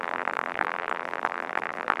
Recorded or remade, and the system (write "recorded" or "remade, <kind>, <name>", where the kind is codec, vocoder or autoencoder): remade, vocoder, BigVGAN v2